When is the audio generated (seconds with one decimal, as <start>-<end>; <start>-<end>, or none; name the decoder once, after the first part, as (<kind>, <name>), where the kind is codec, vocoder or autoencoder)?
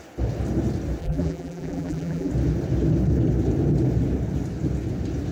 1.0-2.3 (vocoder, BigVGAN v2)